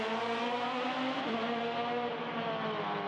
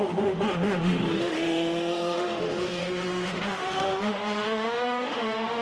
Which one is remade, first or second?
second